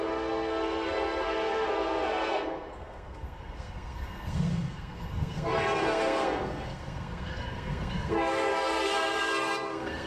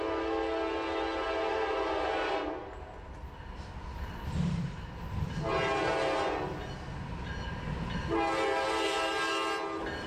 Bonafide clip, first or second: second